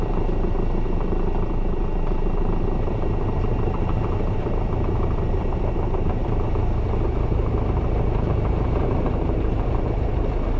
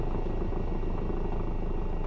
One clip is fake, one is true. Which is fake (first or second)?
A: first